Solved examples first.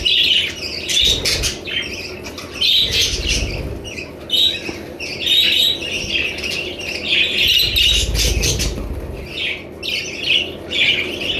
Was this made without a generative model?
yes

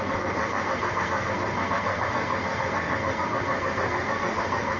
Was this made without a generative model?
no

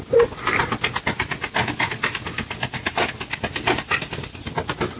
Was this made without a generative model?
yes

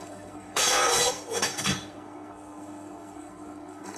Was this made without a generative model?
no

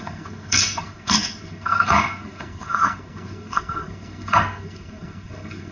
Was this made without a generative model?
no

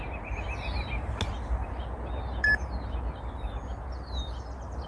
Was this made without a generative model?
yes